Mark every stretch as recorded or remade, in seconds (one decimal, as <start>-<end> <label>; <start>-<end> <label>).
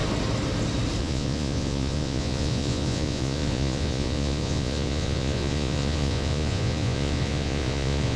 0.0-1.0 recorded; 1.0-8.2 remade